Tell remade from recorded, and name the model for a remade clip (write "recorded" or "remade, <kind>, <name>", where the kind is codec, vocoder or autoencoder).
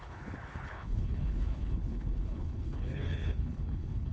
remade, codec, HILCodec